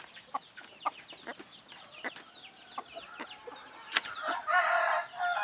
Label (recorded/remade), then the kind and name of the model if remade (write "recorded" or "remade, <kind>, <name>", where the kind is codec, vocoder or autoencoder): recorded